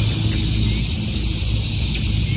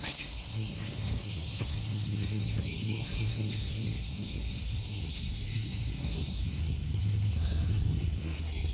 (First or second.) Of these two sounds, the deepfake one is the second